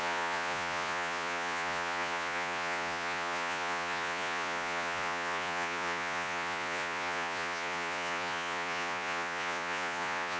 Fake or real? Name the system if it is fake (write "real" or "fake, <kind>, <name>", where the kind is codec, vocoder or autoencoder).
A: fake, vocoder, Vocos